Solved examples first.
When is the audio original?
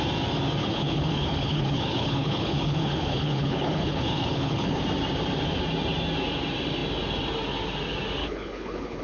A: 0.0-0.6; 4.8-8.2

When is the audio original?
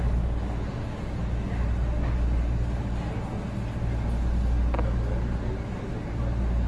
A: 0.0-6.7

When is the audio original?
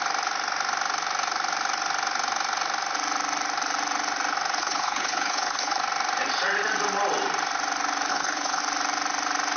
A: 0.0-4.6; 5.8-8.1; 8.6-9.6